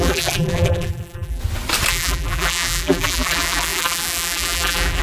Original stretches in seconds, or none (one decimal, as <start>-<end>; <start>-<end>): 1.4-1.9